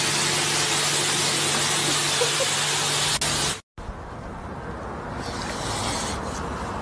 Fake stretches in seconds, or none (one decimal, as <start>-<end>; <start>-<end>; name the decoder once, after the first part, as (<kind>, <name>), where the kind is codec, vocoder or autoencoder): none